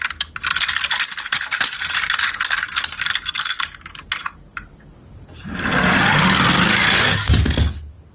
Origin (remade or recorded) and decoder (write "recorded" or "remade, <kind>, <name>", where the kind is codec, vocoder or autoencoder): recorded